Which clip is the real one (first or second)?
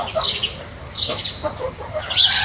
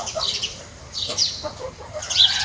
first